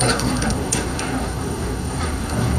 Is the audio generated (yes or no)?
yes